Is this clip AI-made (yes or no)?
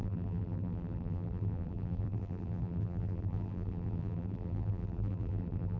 yes